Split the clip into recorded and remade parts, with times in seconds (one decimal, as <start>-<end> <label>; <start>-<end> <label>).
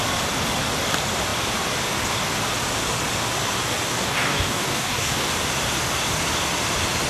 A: 0.0-3.9 recorded; 3.9-5.3 remade; 5.3-7.1 recorded